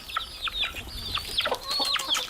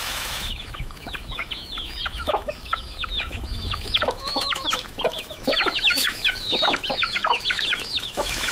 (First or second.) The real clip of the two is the first